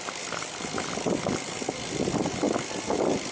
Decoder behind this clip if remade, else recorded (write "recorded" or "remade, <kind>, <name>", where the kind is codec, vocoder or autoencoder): recorded